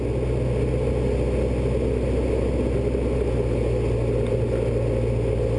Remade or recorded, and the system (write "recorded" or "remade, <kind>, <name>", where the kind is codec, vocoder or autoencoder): recorded